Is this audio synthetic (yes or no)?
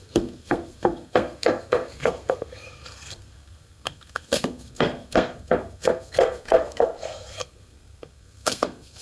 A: yes